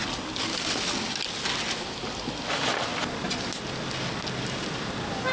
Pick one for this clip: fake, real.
real